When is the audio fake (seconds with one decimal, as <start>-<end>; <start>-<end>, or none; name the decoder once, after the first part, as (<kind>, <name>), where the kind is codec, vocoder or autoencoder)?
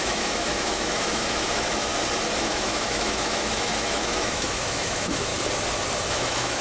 0.0-1.9 (autoencoder, DAC-VAE); 2.4-5.3; 6.1-6.6